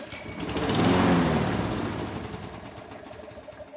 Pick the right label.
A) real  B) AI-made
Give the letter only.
A